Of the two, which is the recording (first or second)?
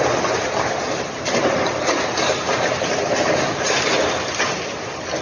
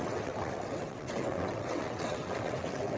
first